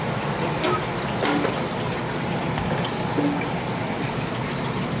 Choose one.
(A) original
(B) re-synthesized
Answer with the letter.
A